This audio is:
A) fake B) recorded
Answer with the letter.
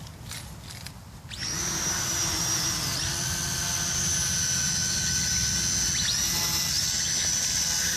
B